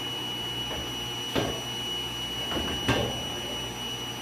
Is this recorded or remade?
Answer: recorded